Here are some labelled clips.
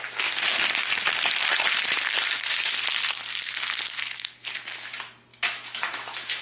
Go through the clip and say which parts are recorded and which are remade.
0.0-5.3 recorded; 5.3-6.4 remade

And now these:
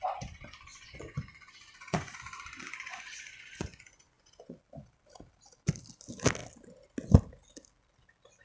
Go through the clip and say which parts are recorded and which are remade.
0.0-0.7 recorded; 0.7-2.2 remade; 2.2-2.6 recorded; 2.6-4.6 remade; 4.6-8.4 recorded

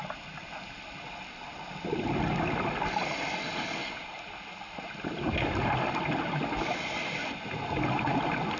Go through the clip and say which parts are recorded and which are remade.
0.0-8.6 recorded

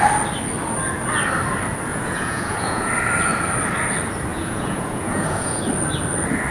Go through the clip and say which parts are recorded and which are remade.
0.0-1.9 recorded; 1.9-2.9 remade; 2.9-4.3 recorded; 4.3-5.6 remade; 5.6-6.5 recorded